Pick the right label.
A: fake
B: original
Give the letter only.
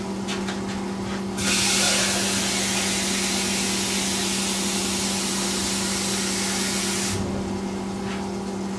B